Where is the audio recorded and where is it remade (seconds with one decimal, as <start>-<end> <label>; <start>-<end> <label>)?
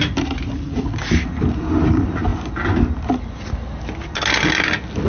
0.0-5.1 recorded